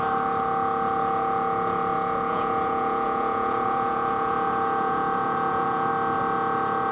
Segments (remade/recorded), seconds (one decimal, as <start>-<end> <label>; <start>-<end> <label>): 0.0-2.3 recorded; 2.3-5.9 remade; 5.9-6.9 recorded